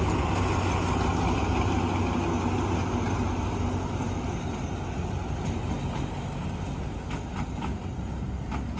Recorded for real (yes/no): yes